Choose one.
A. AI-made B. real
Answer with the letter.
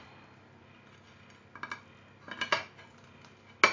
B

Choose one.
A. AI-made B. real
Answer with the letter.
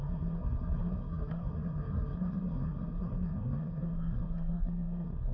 A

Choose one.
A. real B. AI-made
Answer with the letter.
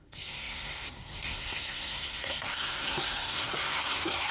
B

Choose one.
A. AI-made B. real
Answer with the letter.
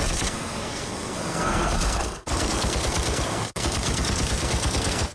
A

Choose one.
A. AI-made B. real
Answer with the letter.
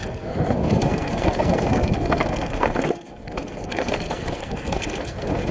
A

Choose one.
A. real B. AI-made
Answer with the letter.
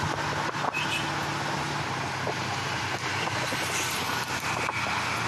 A